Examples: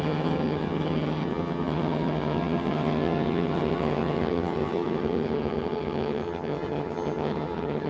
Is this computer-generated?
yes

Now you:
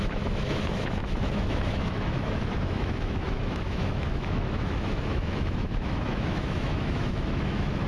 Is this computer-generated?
yes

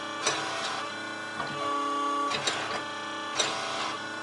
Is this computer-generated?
no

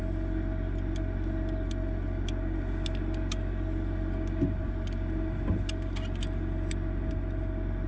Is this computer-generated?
no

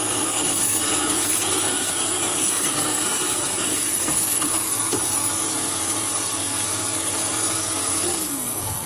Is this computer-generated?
yes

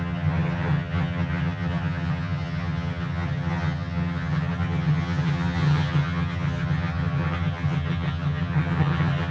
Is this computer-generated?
yes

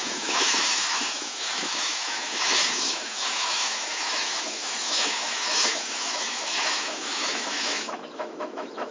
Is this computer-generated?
yes